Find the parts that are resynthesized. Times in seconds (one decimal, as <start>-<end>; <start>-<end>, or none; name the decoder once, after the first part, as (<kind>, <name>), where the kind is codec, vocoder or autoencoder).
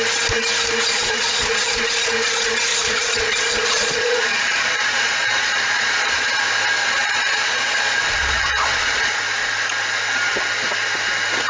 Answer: 0.9-1.8 (vocoder, Vocos); 2.7-6.3; 6.8-9.2